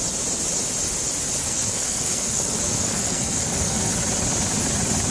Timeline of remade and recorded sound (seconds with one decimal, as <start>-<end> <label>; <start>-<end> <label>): 0.0-1.4 recorded; 1.4-3.9 remade; 3.9-5.1 recorded